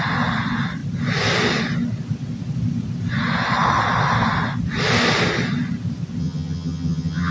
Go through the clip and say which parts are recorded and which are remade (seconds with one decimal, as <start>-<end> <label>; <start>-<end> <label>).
0.0-6.2 recorded; 6.2-7.3 remade